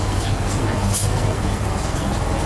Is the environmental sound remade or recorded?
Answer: remade